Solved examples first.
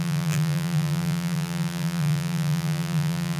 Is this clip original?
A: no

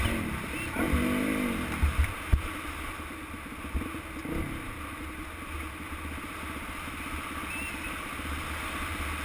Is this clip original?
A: yes